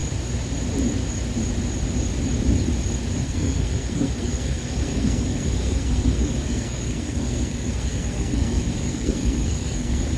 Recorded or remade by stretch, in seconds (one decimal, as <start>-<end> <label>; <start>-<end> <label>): 0.0-3.2 recorded; 3.2-10.2 remade